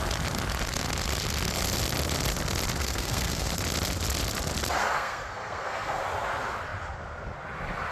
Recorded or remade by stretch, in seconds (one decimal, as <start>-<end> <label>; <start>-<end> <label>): 0.0-2.8 recorded; 2.8-3.5 remade; 3.5-4.8 recorded; 4.8-6.0 remade; 6.0-7.9 recorded